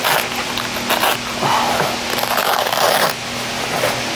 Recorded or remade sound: recorded